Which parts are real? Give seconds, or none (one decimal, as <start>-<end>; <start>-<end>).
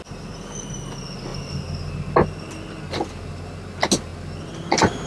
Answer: 0.0-5.1